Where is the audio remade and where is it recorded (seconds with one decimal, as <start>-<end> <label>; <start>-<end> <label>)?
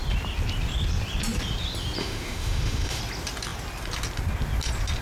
0.0-2.0 recorded; 2.0-3.0 remade; 3.0-5.0 recorded